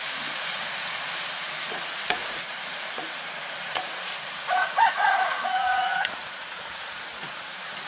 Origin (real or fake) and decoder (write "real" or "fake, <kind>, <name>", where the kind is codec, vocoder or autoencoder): fake, vocoder, Vocos